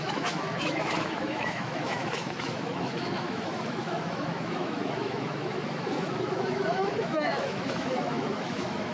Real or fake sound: fake